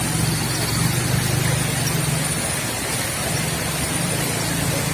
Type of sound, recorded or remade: recorded